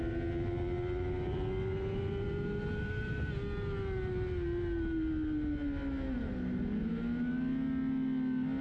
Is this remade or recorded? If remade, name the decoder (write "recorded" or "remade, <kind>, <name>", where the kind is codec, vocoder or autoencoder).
recorded